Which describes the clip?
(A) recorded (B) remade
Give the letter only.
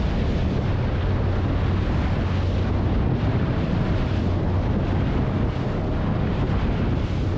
A